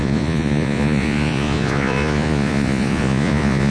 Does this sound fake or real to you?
fake